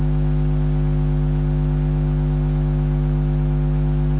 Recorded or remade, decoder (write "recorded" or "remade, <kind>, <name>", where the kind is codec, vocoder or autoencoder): recorded